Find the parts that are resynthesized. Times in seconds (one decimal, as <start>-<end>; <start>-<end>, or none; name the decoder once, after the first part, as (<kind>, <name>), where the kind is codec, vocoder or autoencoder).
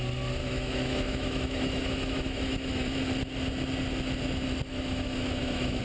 0.4-3.0 (autoencoder, DAC-VAE); 4.7-5.8